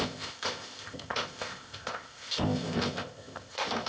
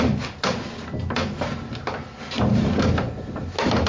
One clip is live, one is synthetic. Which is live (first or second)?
second